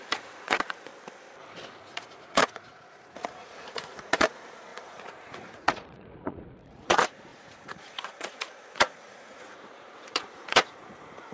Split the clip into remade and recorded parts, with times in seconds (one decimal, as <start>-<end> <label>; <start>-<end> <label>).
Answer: 0.0-0.9 remade; 0.9-1.8 recorded; 1.8-11.3 remade